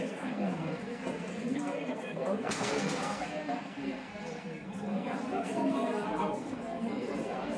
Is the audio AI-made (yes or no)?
yes